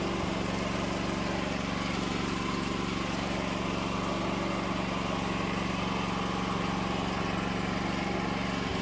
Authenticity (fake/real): real